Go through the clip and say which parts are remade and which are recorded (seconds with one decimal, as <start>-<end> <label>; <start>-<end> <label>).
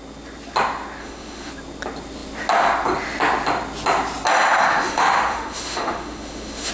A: 0.0-1.0 recorded; 1.0-1.5 remade; 1.5-4.6 recorded; 4.6-6.7 remade